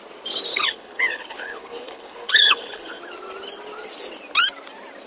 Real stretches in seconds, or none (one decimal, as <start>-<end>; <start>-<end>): 0.0-0.5; 3.0-5.1